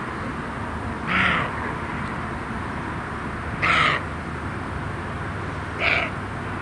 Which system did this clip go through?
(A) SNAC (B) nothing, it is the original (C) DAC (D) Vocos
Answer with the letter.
B